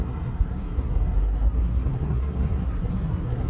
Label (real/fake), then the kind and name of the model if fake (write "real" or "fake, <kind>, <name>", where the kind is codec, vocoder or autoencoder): fake, codec, SNAC